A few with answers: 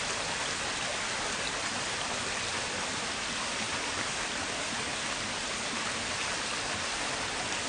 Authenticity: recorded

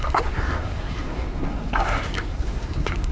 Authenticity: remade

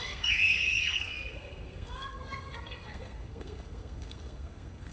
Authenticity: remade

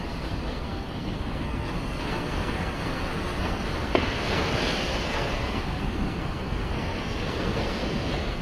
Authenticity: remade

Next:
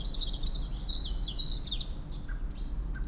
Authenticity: recorded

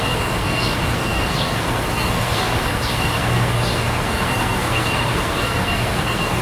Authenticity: remade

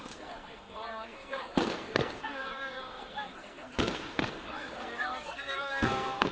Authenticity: remade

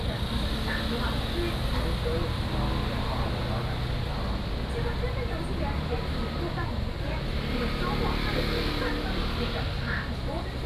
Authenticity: recorded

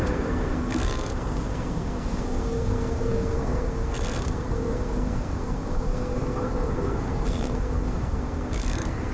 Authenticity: remade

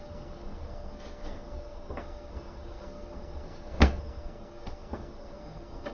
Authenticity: remade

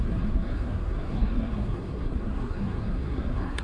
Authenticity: remade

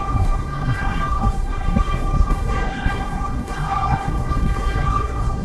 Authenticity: remade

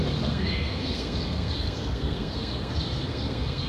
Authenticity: remade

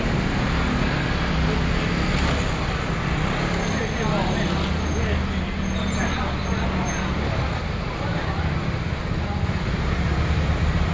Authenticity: recorded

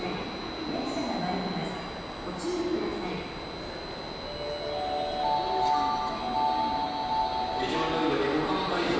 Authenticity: recorded